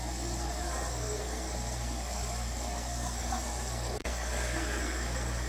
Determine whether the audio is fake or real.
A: fake